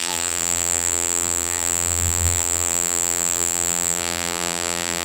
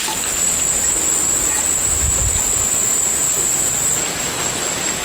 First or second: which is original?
second